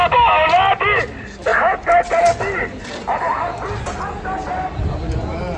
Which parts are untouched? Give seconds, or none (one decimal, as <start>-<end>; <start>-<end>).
0.0-5.6